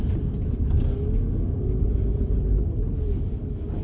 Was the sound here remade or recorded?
recorded